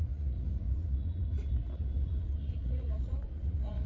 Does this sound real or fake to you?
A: fake